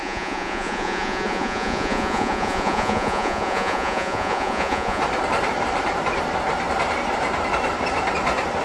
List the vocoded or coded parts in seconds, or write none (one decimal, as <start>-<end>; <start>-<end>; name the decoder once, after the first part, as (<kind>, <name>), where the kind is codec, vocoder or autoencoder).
0.0-5.0 (vocoder, Vocos)